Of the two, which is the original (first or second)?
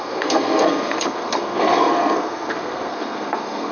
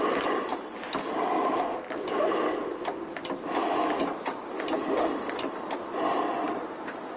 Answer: second